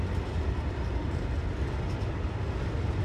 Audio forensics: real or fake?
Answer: real